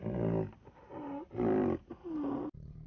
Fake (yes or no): no